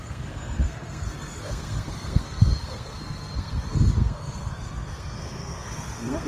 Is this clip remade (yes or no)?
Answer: yes